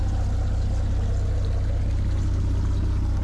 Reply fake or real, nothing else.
real